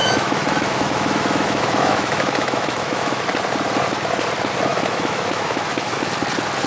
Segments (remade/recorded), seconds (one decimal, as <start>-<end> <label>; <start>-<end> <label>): 0.0-3.2 remade; 3.2-4.7 recorded; 4.7-6.1 remade; 6.1-6.7 recorded